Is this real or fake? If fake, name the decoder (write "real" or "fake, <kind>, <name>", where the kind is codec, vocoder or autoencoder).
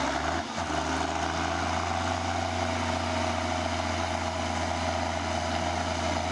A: real